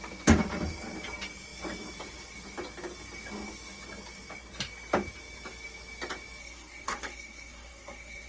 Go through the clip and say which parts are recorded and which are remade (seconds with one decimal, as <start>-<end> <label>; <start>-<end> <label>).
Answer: 0.0-6.4 recorded; 6.4-8.3 remade